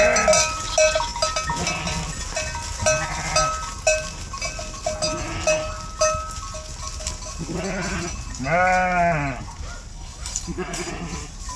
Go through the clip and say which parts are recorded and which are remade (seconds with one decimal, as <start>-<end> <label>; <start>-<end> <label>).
0.0-9.9 recorded; 9.9-10.9 remade; 10.9-11.6 recorded